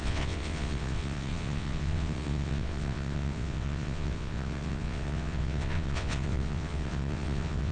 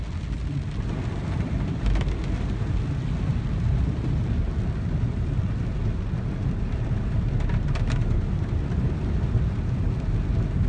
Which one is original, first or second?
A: second